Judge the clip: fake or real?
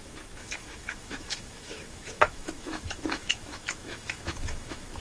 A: fake